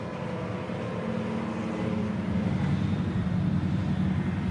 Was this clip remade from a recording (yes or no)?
no